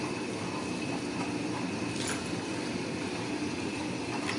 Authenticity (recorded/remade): recorded